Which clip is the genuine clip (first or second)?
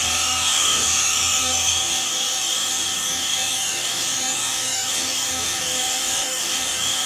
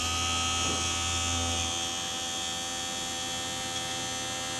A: second